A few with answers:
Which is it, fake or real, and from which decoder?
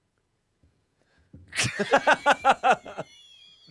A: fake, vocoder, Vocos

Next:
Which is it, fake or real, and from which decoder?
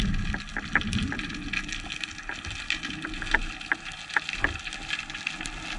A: real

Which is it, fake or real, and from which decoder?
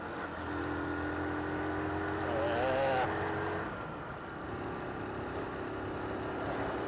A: real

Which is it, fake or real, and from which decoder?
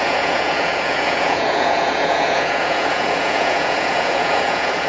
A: fake, vocoder, Vocos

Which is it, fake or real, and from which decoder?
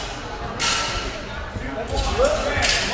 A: real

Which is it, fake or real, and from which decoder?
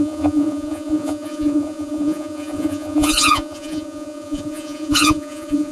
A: fake, vocoder, Vocos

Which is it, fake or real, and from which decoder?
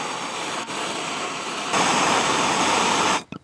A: real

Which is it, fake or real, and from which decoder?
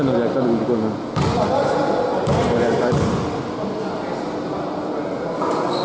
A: real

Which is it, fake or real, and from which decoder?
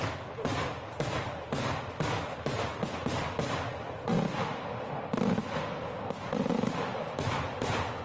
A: real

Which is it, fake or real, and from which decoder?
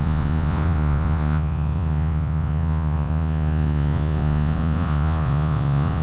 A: fake, vocoder, Vocos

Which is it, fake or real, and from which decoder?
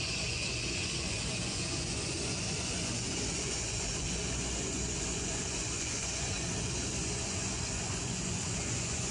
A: fake, vocoder, Vocos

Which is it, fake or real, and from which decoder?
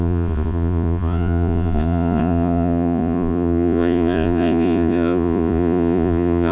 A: fake, vocoder, Vocos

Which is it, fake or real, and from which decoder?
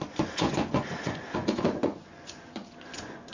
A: fake, vocoder, Vocos